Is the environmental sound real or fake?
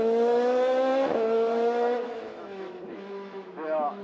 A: fake